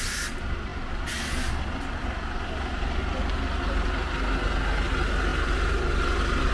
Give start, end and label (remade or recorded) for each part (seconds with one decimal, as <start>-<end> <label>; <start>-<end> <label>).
0.0-6.5 recorded